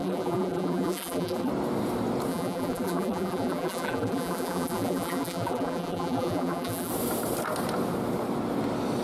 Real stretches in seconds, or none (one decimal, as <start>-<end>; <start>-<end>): 1.5-2.3; 6.9-9.0